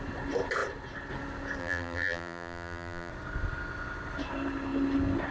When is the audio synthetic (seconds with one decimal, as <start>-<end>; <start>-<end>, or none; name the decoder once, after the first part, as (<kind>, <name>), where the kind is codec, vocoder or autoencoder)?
1.6-3.1 (vocoder, BigVGAN v2)